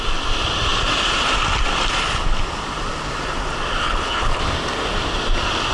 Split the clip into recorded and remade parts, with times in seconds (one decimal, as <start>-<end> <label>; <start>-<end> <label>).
0.0-3.8 recorded; 3.8-4.4 remade; 4.4-5.7 recorded